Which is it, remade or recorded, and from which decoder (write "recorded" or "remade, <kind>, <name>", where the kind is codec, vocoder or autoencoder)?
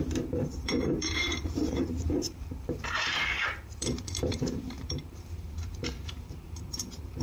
remade, vocoder, BigVGAN v2